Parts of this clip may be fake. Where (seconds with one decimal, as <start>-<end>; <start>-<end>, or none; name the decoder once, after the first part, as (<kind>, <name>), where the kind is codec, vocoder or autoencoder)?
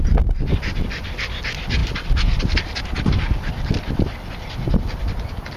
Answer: none